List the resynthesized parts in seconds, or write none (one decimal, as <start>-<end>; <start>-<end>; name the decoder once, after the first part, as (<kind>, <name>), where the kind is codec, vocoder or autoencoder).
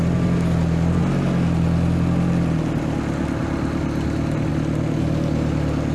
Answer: none